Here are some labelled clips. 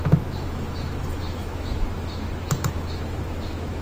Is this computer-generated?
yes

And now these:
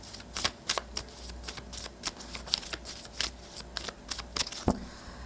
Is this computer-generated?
no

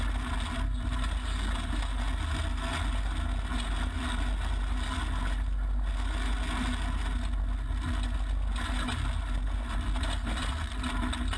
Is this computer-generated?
no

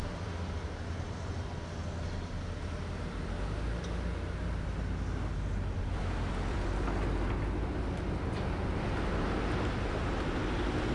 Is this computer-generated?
no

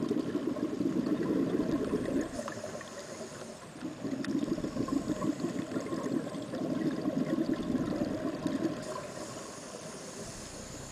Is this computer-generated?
no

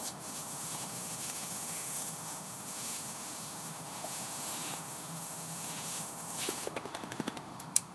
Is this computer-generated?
yes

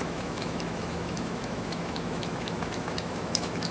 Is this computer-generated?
yes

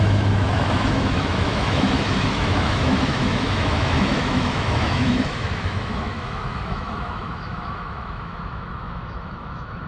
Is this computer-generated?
yes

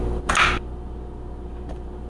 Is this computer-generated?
no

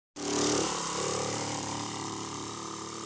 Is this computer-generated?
no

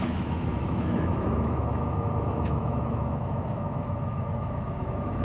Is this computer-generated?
yes